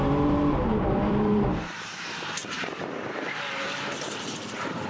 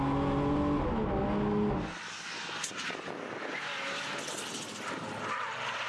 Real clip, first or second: second